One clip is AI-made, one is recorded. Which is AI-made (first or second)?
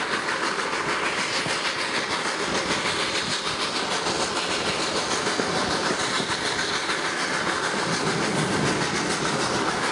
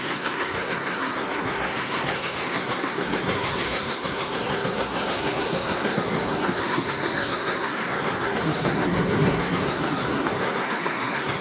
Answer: second